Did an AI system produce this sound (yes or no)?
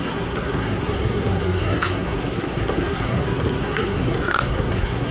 yes